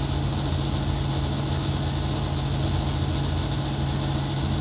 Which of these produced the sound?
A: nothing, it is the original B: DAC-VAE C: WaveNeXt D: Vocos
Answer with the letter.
A